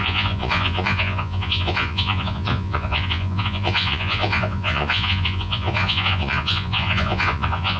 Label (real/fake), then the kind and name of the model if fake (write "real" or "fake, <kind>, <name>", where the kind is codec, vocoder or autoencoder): fake, vocoder, Vocos